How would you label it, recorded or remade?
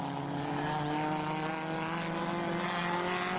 recorded